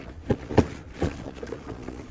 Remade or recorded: remade